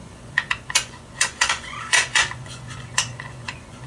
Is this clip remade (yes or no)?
yes